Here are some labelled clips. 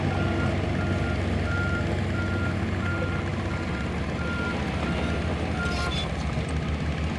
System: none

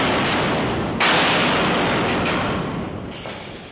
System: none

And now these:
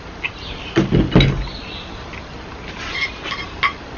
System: none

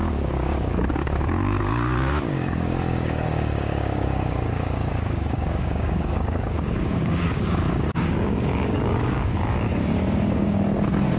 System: codec, DAC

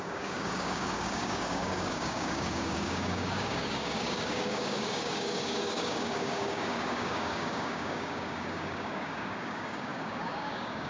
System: codec, DAC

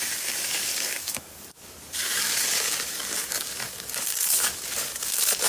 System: codec, DAC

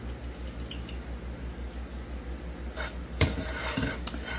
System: none